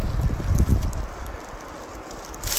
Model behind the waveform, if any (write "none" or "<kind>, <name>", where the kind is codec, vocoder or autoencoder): none